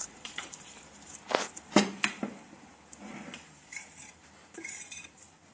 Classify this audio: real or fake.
fake